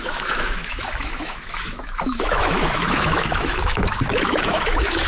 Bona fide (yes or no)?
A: no